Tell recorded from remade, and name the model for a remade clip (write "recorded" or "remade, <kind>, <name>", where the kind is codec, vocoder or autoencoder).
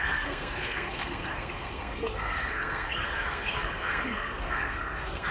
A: remade, codec, SNAC